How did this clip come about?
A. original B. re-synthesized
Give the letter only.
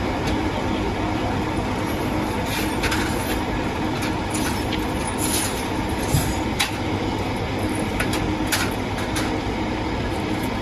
A